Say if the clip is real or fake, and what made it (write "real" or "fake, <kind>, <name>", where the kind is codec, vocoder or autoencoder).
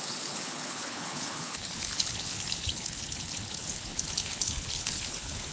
fake, codec, HILCodec